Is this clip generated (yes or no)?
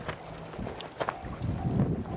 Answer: no